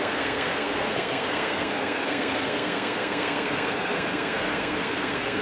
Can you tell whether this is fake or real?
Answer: fake